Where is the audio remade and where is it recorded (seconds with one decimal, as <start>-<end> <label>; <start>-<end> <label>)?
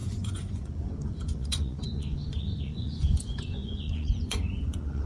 0.0-5.1 remade